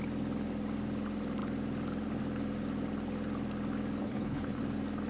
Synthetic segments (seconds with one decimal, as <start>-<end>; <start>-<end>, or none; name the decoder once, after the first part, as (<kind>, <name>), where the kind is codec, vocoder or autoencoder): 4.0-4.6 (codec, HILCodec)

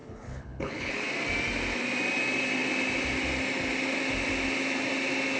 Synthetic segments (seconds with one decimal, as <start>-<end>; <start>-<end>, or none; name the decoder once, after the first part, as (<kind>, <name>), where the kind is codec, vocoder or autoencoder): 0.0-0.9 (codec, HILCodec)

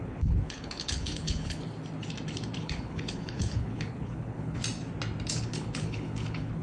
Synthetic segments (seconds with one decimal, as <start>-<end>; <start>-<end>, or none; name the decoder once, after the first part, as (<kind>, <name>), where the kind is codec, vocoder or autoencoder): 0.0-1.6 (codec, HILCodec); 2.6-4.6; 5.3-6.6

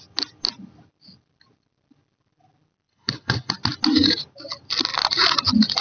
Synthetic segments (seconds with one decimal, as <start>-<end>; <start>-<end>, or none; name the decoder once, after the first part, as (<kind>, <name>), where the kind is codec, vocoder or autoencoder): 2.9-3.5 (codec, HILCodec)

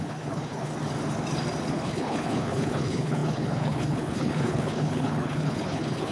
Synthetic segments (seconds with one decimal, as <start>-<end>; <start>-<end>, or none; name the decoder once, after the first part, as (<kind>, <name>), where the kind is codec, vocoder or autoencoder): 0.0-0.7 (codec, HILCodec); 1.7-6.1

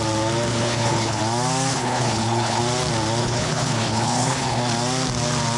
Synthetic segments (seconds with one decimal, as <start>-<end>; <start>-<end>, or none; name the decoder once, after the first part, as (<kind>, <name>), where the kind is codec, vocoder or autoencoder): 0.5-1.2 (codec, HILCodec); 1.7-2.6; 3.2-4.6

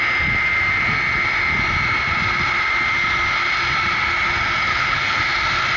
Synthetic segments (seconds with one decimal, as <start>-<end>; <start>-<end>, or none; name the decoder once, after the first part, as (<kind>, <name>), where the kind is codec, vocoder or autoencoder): 4.7-5.2 (codec, HILCodec)